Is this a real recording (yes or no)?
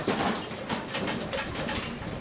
no